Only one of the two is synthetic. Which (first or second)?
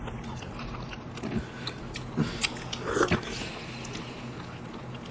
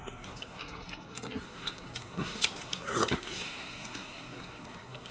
second